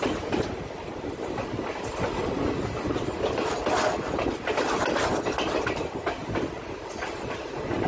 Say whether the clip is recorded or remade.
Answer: recorded